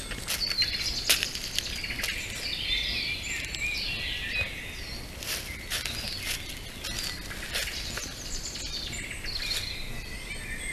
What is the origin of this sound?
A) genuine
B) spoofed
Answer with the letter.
A